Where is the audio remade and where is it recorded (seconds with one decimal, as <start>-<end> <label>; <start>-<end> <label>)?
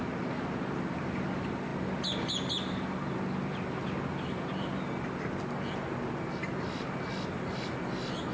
0.0-8.3 recorded